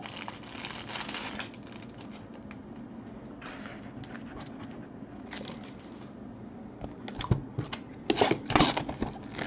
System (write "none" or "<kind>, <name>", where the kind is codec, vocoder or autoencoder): none